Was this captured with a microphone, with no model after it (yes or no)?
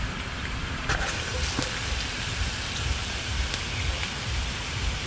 yes